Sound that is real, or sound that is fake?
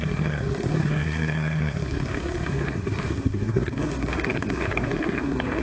fake